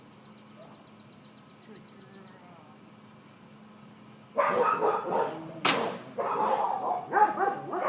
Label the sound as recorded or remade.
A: recorded